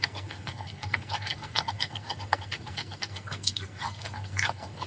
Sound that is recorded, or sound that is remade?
remade